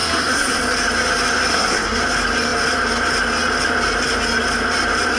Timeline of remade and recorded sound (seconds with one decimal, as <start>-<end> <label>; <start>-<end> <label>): 0.0-0.6 remade; 0.6-1.5 recorded; 1.5-2.0 remade; 2.0-5.2 recorded